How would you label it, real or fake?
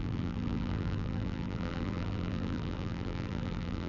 fake